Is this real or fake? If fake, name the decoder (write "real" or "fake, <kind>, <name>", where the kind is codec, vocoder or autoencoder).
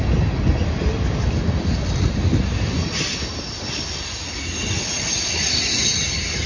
real